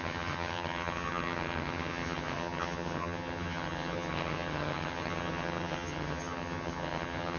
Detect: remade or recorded remade